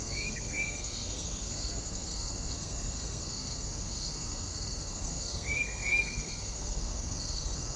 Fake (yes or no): yes